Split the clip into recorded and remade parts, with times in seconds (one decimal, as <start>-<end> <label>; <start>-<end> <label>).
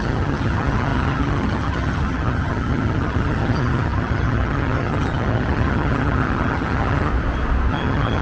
0.0-7.1 remade; 7.1-7.7 recorded; 7.7-8.2 remade